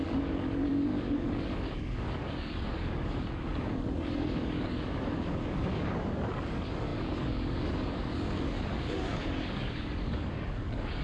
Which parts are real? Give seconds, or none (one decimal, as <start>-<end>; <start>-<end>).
none